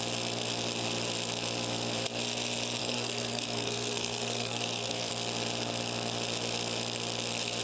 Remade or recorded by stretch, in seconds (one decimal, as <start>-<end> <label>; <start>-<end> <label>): 0.0-2.8 recorded; 2.8-5.1 remade; 5.1-7.6 recorded